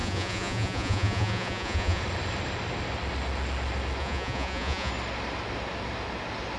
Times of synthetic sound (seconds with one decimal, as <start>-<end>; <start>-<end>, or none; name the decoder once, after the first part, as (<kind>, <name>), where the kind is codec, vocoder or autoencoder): 0.0-2.0 (vocoder, Vocos); 4.0-4.9